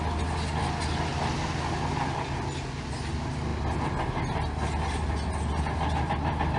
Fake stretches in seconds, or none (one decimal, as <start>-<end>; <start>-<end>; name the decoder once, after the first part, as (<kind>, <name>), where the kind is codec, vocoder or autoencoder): none